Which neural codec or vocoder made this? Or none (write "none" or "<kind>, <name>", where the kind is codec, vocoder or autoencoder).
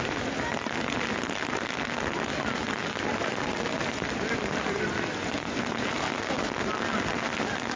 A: none